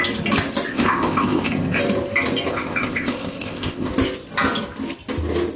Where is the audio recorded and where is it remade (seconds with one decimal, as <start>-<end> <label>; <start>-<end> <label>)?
0.0-0.7 recorded; 0.7-1.8 remade; 1.8-2.5 recorded; 2.5-3.9 remade; 3.9-5.6 recorded

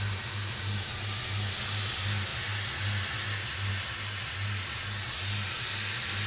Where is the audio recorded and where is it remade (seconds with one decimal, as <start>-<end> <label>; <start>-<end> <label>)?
0.0-6.3 recorded

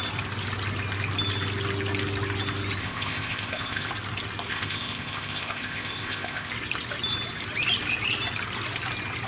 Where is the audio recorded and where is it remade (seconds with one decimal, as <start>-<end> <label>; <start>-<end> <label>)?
0.0-2.8 recorded; 2.8-3.9 remade; 3.9-4.5 recorded; 4.5-6.5 remade; 6.5-9.3 recorded

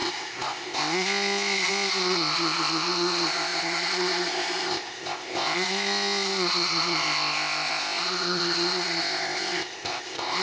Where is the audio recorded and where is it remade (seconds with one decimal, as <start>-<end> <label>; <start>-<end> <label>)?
0.0-10.4 remade

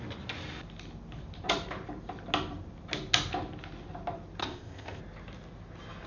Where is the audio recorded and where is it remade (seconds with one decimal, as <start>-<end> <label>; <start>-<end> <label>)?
0.0-4.4 recorded; 4.4-5.0 remade; 5.0-6.1 recorded